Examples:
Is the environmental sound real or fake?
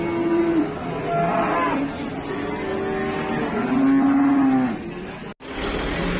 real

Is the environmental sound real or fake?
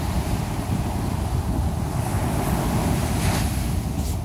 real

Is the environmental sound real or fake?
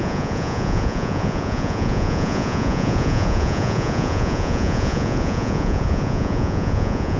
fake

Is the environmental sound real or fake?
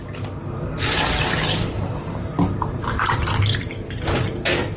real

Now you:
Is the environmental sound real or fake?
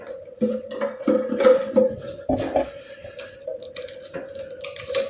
real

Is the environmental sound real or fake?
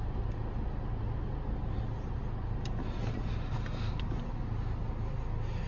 real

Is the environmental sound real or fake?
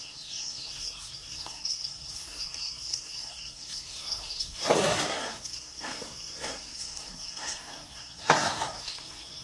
fake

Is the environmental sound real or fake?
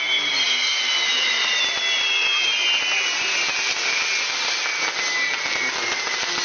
real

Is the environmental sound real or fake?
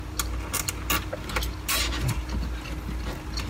real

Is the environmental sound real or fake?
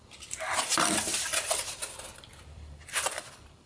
fake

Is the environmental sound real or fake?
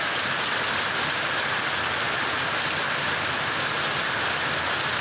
real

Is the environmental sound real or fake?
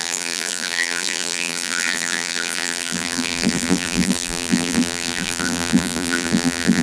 fake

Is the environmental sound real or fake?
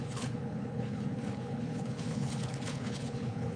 fake